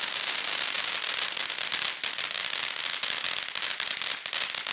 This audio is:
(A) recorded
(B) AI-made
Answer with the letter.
A